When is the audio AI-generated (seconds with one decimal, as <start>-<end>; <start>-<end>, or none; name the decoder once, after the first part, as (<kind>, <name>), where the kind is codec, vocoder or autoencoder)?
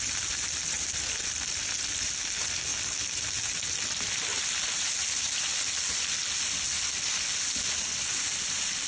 none